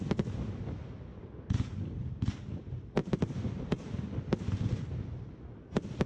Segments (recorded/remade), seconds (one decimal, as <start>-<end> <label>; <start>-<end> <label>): 0.0-3.0 recorded; 3.0-3.9 remade; 3.9-6.1 recorded